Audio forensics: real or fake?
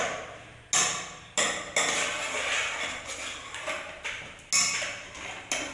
real